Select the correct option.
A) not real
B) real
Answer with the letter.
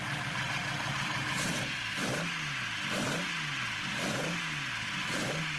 B